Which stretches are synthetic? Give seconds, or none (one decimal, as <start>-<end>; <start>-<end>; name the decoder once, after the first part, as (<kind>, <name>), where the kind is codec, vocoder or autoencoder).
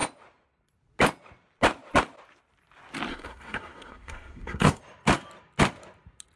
3.1-4.8 (codec, SNAC)